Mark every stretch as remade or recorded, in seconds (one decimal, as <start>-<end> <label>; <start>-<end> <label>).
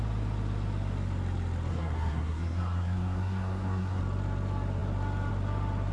0.0-1.7 recorded; 1.7-4.0 remade; 4.0-5.9 recorded